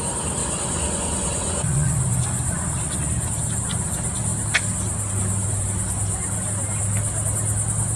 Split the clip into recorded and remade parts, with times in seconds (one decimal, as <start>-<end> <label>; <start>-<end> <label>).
0.0-0.4 recorded; 0.4-3.1 remade; 3.1-8.0 recorded